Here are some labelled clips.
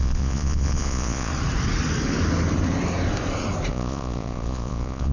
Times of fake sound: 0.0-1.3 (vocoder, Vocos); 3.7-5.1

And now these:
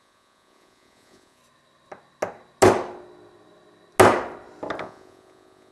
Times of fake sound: 0.0-1.4 (vocoder, Vocos); 4.8-5.7

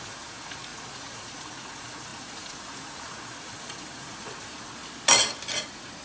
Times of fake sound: 0.0-4.8 (vocoder, Vocos); 5.6-6.0

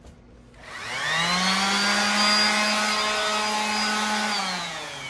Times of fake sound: 4.4-5.1 (vocoder, Vocos)

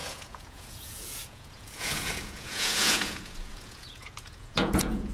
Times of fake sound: 0.0-5.1 (vocoder, Vocos)

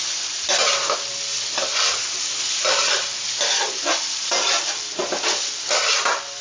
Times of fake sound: none

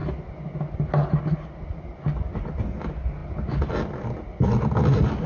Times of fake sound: none

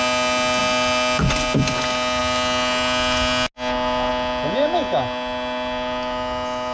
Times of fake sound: none